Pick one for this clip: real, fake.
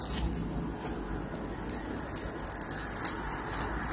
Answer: real